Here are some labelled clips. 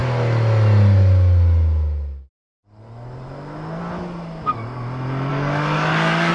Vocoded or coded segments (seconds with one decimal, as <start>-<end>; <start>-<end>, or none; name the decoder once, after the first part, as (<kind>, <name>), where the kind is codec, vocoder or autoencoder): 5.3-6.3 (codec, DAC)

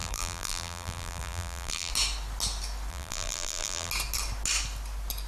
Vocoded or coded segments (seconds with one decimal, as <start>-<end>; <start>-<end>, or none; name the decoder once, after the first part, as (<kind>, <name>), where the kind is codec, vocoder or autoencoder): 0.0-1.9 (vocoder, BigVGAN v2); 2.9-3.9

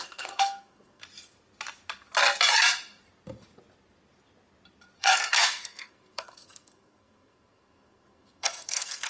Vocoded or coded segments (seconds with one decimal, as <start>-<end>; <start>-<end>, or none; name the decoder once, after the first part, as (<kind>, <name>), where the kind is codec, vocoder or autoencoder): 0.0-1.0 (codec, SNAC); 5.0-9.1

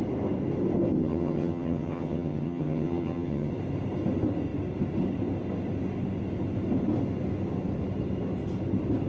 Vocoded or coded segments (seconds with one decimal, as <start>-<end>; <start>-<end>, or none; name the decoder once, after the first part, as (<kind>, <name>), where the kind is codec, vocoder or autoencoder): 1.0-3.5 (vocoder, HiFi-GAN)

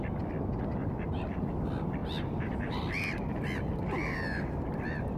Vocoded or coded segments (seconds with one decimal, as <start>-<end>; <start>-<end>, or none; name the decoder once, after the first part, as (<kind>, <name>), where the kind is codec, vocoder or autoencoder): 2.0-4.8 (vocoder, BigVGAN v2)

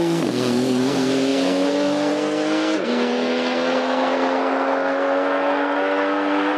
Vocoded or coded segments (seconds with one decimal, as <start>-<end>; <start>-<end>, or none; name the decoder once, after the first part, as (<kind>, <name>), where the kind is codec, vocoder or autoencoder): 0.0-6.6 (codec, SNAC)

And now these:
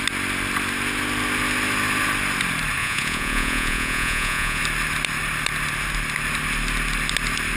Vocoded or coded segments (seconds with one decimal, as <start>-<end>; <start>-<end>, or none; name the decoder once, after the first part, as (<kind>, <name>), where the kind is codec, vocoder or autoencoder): 2.8-4.6 (vocoder, Vocos)

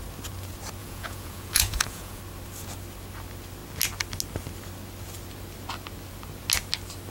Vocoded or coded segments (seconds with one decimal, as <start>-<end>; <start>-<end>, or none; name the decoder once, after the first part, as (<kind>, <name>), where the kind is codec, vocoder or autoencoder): 0.8-2.2 (vocoder, Vocos)